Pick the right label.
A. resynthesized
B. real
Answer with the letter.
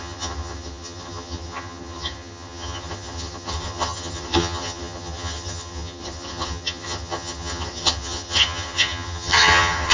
A